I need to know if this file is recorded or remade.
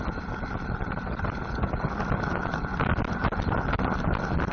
recorded